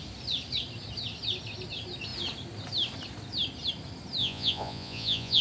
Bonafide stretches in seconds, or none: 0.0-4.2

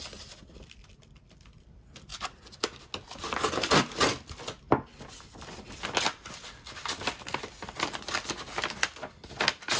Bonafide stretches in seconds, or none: 0.0-9.8

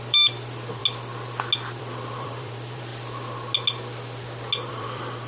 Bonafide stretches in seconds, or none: 0.8-1.8; 2.9-4.7